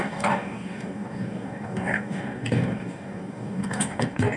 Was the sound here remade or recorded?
remade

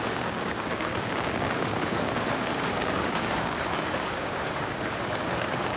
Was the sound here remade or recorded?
remade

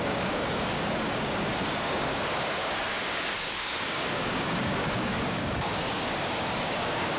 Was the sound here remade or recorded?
remade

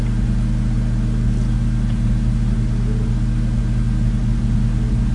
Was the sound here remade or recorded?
recorded